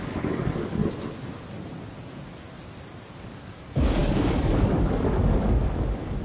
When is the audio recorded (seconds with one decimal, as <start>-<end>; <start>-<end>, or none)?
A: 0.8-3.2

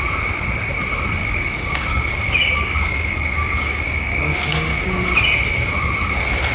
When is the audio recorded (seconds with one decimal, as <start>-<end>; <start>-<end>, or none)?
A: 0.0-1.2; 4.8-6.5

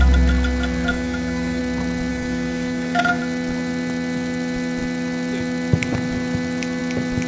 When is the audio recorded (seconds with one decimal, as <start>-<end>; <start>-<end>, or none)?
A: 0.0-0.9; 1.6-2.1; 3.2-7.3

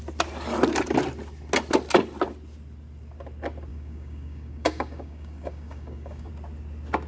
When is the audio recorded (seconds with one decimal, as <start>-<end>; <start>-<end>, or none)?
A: 0.0-3.7; 6.3-7.1

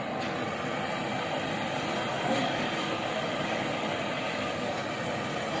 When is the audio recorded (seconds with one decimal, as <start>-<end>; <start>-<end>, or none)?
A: 0.0-2.1; 4.7-5.6

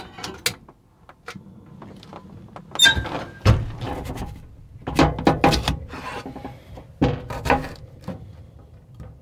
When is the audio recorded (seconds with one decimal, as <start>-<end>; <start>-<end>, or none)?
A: 0.0-9.2

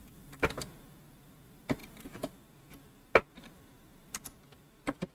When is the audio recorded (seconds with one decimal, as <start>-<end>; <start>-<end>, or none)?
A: 0.0-5.1